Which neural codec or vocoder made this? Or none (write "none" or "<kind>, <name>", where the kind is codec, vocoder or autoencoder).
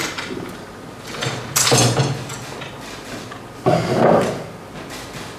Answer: none